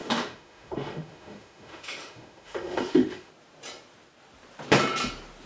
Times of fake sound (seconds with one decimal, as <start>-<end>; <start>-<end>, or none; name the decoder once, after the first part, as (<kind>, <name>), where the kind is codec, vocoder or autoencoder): 0.0-3.3 (autoencoder, DAC-VAE)